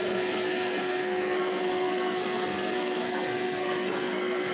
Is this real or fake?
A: fake